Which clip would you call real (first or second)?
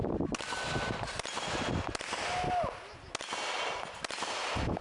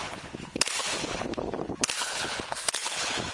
first